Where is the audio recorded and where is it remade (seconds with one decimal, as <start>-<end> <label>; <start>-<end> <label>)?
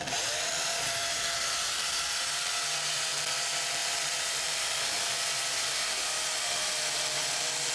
0.0-3.8 recorded; 3.8-5.3 remade; 5.3-7.7 recorded